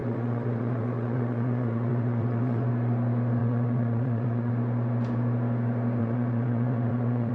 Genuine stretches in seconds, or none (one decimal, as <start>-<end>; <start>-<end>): 2.7-3.4; 4.5-6.0